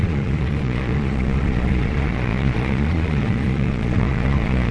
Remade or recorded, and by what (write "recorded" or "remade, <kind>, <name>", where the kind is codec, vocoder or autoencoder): remade, vocoder, Vocos